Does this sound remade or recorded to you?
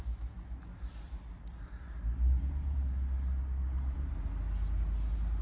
recorded